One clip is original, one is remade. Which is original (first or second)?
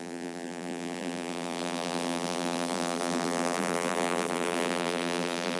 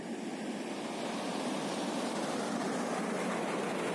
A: second